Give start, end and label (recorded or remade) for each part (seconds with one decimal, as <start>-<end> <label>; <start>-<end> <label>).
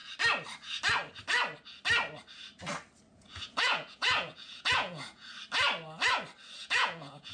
0.0-3.1 recorded; 3.1-5.3 remade; 5.3-6.6 recorded; 6.6-7.3 remade